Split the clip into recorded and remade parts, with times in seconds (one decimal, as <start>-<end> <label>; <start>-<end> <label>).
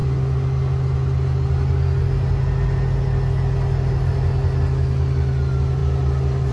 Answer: 0.0-6.5 recorded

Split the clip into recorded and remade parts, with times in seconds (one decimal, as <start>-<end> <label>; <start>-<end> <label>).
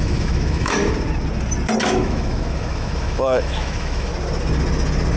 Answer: 0.0-0.8 remade; 0.8-1.8 recorded; 1.8-4.1 remade; 4.1-5.2 recorded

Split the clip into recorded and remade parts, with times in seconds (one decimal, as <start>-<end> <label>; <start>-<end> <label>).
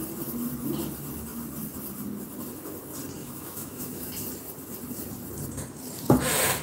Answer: 0.0-3.2 recorded; 3.2-4.1 remade; 4.1-6.6 recorded